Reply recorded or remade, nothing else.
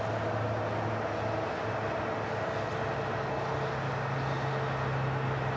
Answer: recorded